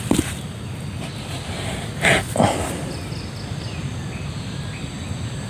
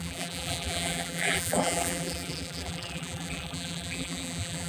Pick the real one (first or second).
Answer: first